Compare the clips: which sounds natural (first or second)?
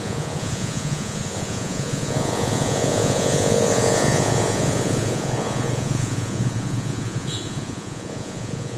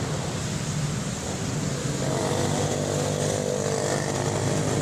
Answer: second